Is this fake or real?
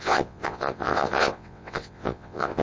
fake